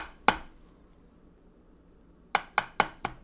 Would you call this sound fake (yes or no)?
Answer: no